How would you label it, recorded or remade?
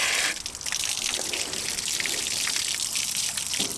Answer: recorded